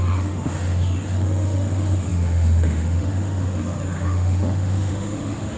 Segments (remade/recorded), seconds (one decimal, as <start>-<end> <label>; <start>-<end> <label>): 0.0-5.6 remade